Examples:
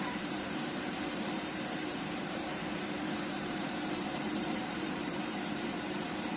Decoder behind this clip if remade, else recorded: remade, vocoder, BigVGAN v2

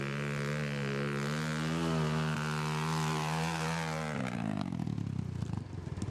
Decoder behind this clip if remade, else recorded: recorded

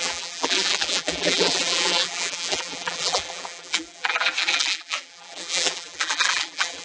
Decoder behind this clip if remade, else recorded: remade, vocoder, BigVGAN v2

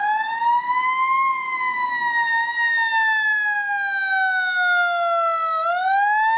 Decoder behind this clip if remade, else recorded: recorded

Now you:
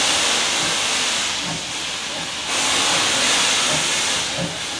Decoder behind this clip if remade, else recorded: recorded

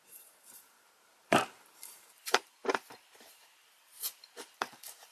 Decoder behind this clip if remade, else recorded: remade, vocoder, BigVGAN v2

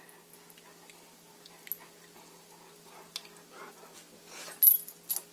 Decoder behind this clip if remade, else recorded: recorded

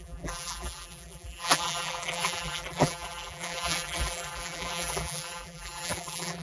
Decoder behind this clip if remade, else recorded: remade, vocoder, BigVGAN v2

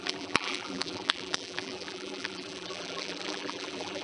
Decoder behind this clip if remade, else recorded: remade, vocoder, BigVGAN v2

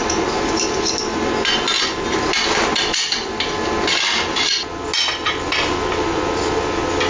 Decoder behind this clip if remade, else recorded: recorded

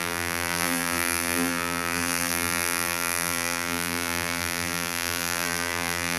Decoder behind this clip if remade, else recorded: remade, vocoder, BigVGAN v2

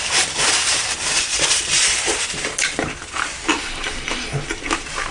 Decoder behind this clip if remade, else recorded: remade, vocoder, BigVGAN v2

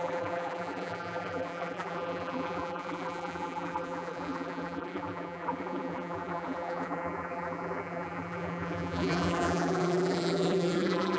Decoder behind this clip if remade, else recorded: remade, vocoder, BigVGAN v2